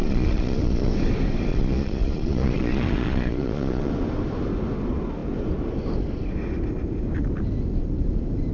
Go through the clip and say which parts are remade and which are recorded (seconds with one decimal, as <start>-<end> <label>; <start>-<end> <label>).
0.0-0.9 remade; 0.9-1.5 recorded; 1.5-3.9 remade; 3.9-8.5 recorded